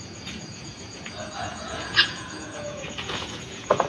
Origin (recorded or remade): remade